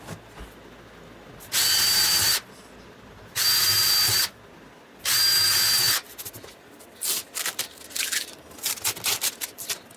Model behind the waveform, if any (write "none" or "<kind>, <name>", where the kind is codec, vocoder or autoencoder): none